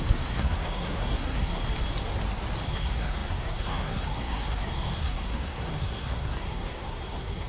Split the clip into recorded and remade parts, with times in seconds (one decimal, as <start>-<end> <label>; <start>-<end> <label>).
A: 0.0-1.6 remade; 1.6-2.7 recorded; 2.7-7.5 remade